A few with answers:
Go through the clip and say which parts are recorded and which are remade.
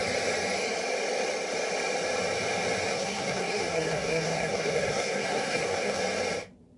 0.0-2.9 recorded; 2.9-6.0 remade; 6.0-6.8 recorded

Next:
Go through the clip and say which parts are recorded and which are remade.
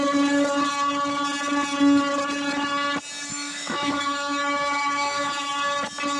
0.0-3.3 recorded; 3.3-5.5 remade; 5.5-6.2 recorded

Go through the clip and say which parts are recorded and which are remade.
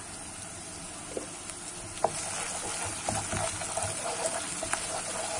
0.0-5.4 recorded